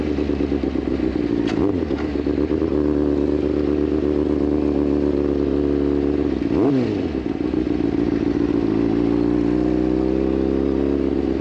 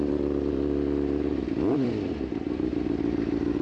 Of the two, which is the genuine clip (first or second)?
first